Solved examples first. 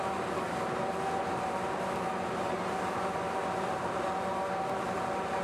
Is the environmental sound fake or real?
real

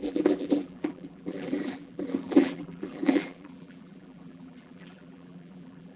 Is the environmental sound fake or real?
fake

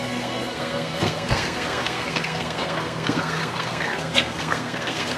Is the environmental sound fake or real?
fake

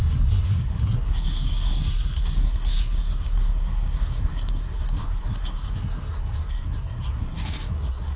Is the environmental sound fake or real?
fake